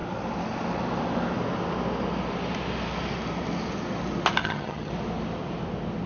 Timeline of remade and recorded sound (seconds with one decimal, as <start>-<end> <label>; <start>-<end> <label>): 0.0-4.4 recorded; 4.4-4.9 remade; 4.9-6.1 recorded